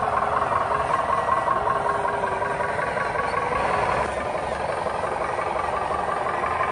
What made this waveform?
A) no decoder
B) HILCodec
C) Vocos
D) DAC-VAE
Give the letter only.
A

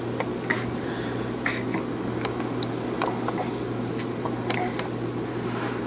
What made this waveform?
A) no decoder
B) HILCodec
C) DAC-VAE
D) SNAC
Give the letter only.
A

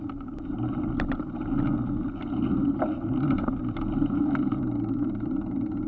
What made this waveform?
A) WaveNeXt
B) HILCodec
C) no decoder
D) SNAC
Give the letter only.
C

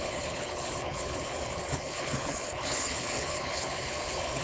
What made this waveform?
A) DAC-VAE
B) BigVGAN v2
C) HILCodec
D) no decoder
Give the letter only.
C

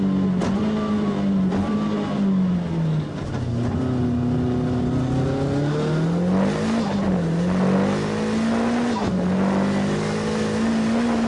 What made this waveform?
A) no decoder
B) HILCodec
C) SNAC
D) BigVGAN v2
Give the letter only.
A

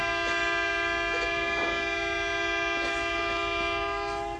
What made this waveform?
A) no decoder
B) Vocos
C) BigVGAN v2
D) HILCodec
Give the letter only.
A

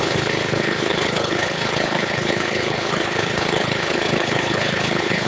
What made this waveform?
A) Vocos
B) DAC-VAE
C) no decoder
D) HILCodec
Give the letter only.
D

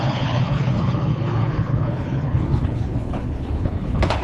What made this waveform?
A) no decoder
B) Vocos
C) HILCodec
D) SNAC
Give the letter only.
C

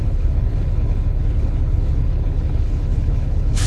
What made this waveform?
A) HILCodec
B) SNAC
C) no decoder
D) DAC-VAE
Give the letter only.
A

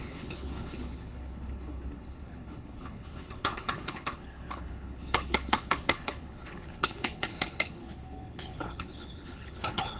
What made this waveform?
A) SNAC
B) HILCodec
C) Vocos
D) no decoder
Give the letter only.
B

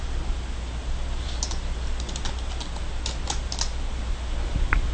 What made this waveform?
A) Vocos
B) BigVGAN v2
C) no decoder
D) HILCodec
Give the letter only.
C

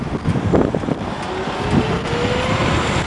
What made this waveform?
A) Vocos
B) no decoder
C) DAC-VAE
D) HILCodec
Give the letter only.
B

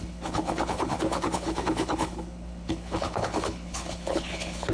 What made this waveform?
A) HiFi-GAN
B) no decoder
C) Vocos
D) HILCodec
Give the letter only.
D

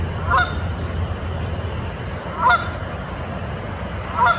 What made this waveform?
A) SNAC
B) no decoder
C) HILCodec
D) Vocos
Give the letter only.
B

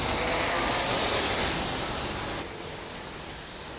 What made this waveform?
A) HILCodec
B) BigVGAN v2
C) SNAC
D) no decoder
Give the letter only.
D